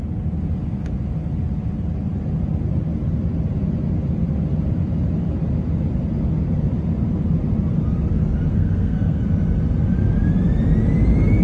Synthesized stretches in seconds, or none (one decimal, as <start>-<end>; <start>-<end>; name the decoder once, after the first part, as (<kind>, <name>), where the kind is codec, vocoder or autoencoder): 8.5-9.2 (codec, SNAC)

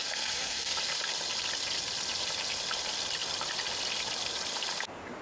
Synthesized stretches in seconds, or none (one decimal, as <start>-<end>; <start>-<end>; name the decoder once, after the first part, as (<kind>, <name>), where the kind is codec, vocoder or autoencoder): 0.0-0.7 (codec, SNAC)